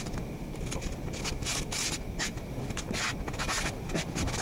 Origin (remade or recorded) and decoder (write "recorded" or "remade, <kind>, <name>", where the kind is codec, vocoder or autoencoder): recorded